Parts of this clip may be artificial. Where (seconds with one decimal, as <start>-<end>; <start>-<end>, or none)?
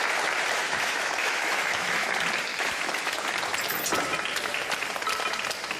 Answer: 0.6-2.1; 2.5-3.2